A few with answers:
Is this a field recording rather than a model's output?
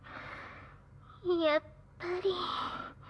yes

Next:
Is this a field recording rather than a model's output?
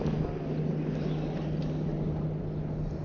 yes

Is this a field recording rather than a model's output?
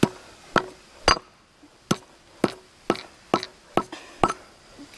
yes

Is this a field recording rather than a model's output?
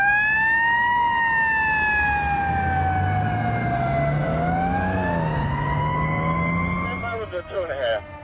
yes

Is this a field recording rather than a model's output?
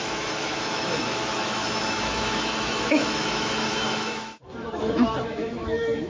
no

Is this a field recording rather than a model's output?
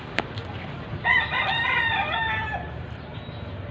no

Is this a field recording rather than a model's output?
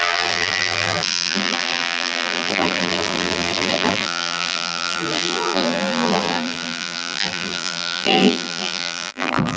no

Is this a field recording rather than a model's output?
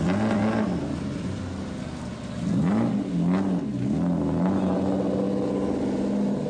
yes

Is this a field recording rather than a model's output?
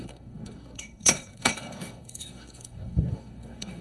no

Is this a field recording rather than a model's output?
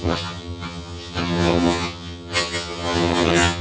no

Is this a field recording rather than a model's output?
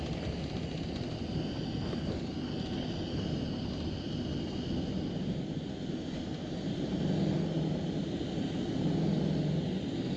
yes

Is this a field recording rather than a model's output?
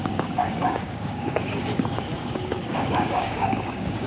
no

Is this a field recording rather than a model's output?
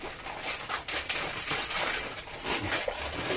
no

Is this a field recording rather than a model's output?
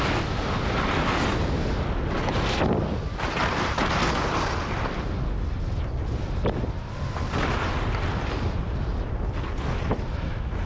yes